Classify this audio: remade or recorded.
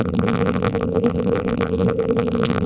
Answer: remade